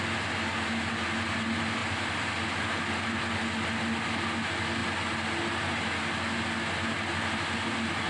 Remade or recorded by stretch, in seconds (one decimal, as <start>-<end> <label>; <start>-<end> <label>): 0.0-8.1 recorded